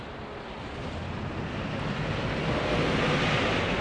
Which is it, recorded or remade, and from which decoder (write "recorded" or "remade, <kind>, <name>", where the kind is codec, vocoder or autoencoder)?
recorded